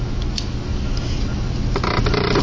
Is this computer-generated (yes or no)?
no